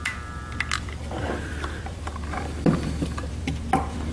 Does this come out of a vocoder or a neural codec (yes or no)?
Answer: yes